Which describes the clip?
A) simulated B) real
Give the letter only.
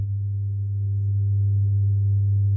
B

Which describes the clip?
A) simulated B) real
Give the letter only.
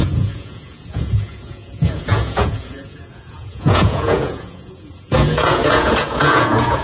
A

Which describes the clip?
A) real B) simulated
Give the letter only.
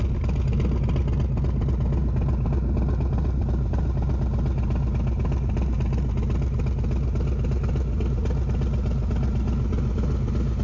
A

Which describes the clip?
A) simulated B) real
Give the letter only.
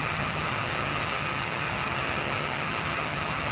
A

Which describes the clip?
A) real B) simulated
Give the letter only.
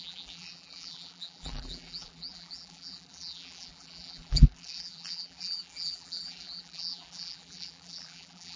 B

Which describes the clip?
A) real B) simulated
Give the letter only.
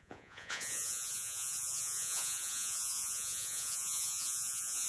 B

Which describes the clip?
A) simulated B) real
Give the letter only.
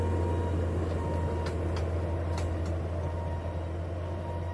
B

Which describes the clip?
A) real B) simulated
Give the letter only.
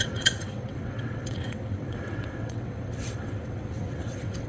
B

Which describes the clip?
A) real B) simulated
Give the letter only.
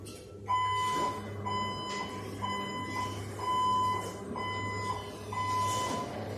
A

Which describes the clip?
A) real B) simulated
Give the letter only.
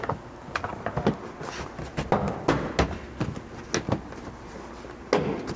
A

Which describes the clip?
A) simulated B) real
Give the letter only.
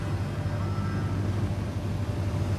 B